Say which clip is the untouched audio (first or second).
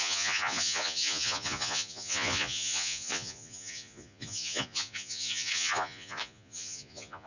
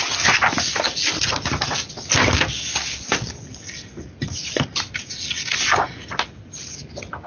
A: second